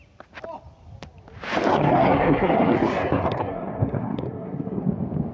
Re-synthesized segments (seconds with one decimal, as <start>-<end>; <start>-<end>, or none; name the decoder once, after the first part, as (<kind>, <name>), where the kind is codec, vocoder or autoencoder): 1.7-4.8 (codec, SNAC)